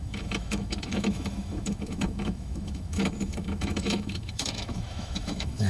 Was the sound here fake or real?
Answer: fake